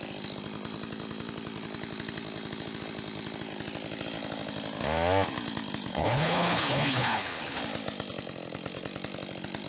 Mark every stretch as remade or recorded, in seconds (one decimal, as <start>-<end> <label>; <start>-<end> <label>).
0.0-5.9 recorded; 5.9-7.6 remade; 7.6-9.7 recorded